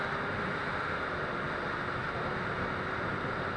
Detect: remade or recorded recorded